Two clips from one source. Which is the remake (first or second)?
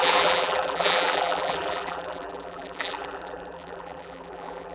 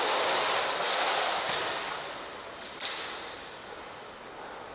first